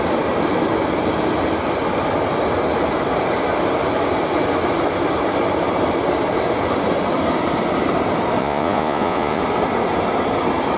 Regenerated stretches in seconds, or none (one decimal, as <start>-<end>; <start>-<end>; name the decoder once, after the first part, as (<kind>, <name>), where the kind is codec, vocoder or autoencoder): 8.4-9.4 (vocoder, Vocos)